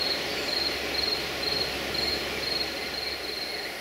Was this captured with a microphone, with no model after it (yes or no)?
no